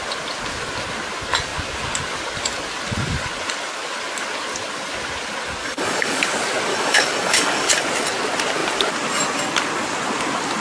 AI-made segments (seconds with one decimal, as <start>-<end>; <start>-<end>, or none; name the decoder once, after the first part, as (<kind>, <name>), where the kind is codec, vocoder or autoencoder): 5.6-6.2 (codec, DAC); 6.7-7.7